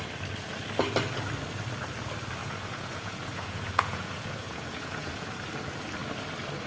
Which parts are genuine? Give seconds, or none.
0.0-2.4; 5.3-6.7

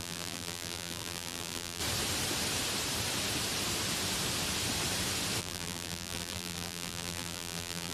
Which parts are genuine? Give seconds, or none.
1.8-5.4

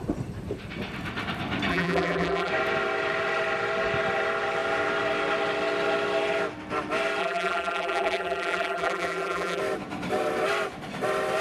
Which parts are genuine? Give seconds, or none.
0.0-1.7; 2.5-7.2; 9.6-11.4

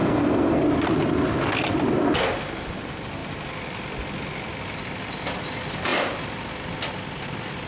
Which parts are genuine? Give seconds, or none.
0.6-7.7

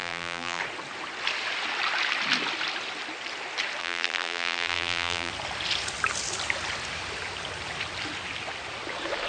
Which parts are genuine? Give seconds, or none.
0.6-3.8; 5.3-9.3

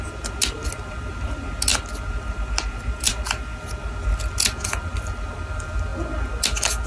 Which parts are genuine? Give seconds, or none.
0.0-6.9

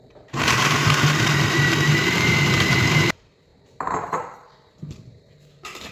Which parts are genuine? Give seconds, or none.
none